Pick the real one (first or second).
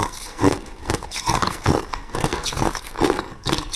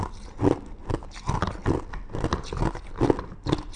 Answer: second